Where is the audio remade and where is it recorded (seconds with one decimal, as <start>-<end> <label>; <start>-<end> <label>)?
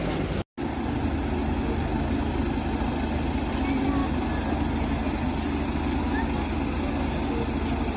0.0-8.0 recorded